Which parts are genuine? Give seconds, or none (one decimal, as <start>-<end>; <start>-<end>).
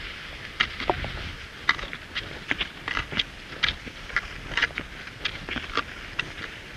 0.0-6.8